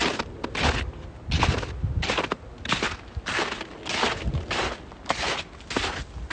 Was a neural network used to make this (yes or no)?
no